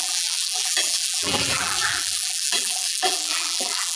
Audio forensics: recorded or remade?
remade